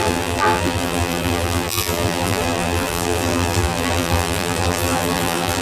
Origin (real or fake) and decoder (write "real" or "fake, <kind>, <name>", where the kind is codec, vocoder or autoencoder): fake, vocoder, BigVGAN v2